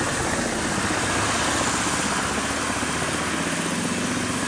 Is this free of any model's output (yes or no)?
yes